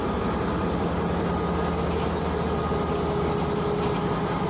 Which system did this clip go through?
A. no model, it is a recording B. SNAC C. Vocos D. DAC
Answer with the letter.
A